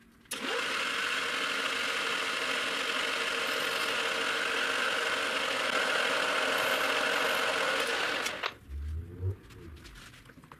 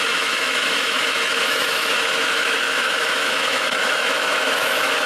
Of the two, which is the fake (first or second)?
second